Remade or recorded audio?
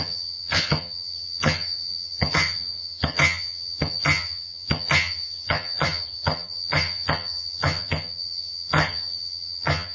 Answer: remade